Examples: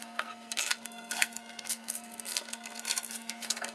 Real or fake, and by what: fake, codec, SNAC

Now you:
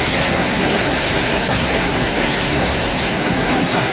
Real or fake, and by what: fake, codec, SNAC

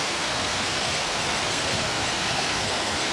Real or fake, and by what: fake, codec, SNAC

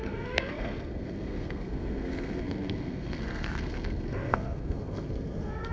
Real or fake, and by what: fake, codec, SNAC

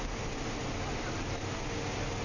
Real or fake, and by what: real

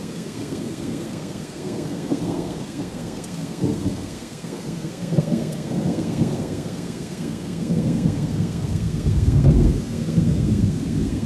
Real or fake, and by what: fake, codec, SNAC